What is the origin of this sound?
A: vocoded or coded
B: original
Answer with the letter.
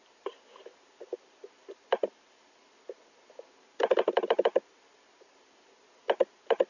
B